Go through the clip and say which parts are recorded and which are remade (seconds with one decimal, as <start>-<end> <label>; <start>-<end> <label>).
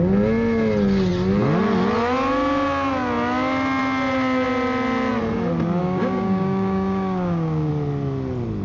0.0-5.8 recorded; 5.8-7.7 remade; 7.7-8.6 recorded